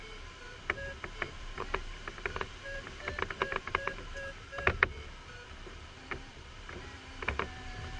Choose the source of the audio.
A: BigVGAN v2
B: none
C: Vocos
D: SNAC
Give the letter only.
A